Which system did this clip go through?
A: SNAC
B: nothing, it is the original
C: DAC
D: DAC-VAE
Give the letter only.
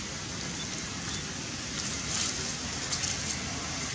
B